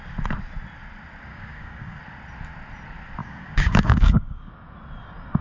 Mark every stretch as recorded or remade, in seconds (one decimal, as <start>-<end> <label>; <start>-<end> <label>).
0.0-1.3 recorded; 1.3-2.0 remade; 2.0-3.2 recorded; 3.2-4.5 remade; 4.5-5.4 recorded